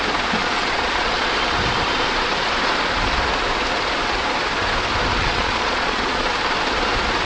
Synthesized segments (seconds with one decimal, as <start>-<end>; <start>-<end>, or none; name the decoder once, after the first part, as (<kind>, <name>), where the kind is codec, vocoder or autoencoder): 0.4-1.3 (vocoder, Vocos); 5.2-6.3